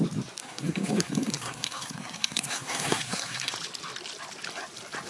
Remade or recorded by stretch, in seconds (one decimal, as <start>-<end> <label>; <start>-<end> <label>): 0.0-0.4 recorded; 0.4-3.5 remade; 3.5-5.1 recorded